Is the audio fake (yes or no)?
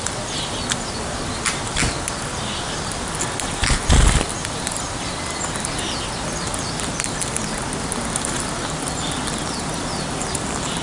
no